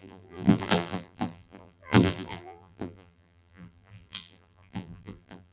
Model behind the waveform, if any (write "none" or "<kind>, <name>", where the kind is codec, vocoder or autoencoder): vocoder, BigVGAN v2